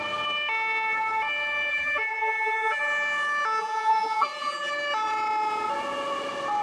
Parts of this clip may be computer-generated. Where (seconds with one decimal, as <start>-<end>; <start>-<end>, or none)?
1.7-2.8; 3.6-4.7